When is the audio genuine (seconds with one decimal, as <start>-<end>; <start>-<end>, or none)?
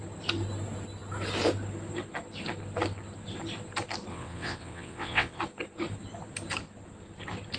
0.0-4.1; 5.4-7.6